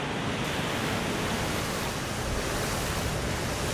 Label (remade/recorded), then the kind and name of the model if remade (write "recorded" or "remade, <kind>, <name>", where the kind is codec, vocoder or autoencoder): recorded